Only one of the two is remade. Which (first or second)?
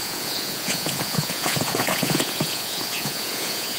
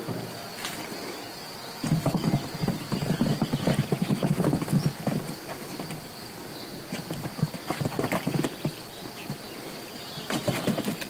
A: first